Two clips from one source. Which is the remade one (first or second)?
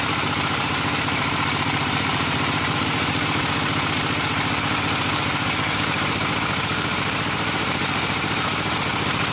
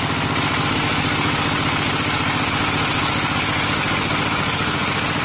first